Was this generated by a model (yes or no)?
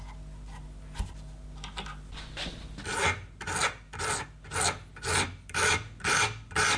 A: no